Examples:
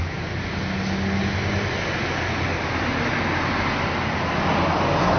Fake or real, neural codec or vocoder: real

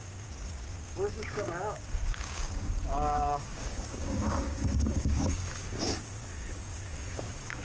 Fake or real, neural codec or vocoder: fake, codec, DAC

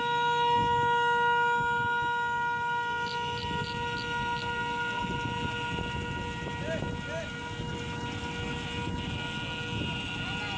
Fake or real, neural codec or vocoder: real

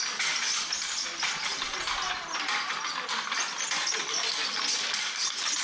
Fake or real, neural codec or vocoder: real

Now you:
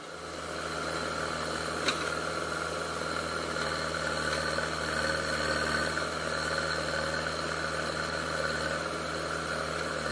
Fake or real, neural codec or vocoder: real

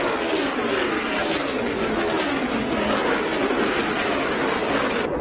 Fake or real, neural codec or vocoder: real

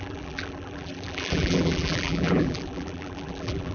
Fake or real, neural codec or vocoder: fake, vocoder, BigVGAN v2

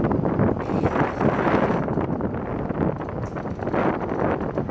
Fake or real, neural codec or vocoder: real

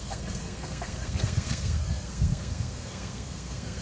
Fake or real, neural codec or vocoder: fake, codec, SNAC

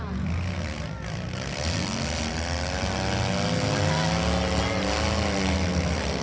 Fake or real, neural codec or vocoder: real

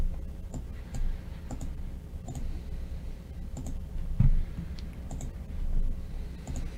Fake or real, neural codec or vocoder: real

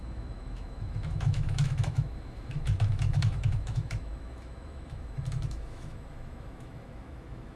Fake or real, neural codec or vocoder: fake, autoencoder, DAC-VAE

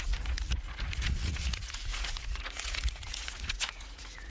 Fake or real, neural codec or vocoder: fake, vocoder, Vocos